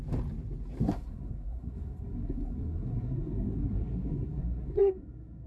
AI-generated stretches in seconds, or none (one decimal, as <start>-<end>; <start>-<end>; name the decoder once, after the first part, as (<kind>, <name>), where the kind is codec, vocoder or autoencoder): 0.9-5.5 (codec, SNAC)